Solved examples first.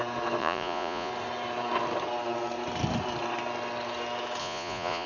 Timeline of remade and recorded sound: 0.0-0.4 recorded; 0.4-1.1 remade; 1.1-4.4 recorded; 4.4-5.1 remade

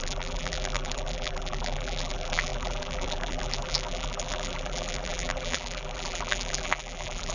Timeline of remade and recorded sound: 0.0-7.3 remade